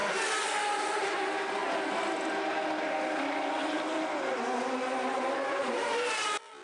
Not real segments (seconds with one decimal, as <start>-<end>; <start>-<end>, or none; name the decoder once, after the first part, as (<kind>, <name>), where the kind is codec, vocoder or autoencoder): 0.7-1.6 (vocoder, BigVGAN v2); 5.6-6.6